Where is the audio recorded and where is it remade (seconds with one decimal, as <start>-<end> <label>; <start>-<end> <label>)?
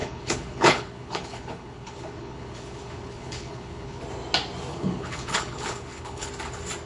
0.0-4.0 remade; 4.0-4.7 recorded; 4.7-6.3 remade; 6.3-6.9 recorded